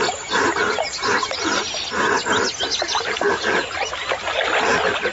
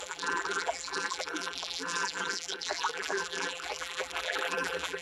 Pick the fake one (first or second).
second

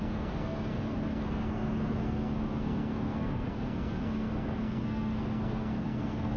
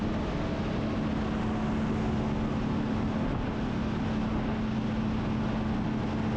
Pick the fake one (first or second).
first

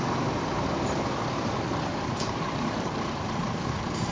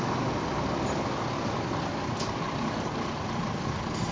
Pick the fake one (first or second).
first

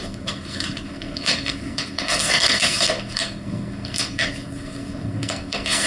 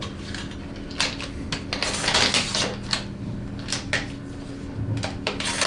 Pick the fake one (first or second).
first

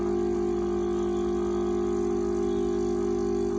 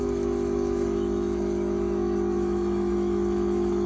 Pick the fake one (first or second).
second